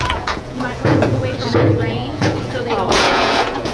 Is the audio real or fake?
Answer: fake